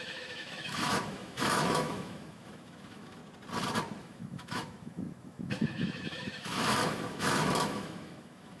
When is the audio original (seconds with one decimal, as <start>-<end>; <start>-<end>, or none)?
3.2-4.0